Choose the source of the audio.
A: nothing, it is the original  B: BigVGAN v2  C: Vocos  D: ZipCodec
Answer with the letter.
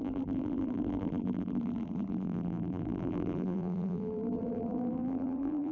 B